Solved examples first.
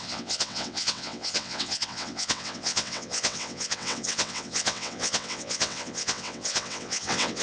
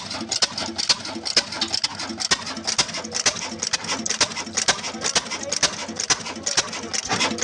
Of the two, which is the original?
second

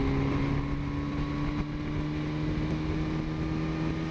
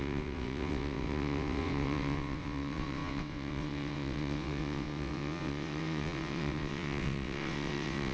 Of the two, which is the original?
first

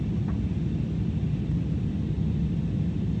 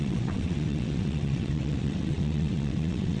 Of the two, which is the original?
first